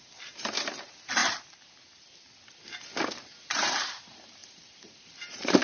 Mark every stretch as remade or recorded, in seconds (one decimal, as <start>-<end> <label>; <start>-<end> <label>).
0.0-1.2 remade; 1.2-3.4 recorded; 3.4-5.6 remade